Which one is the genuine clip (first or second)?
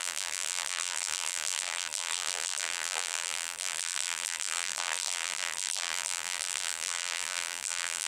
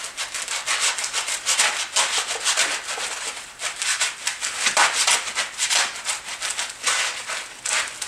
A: second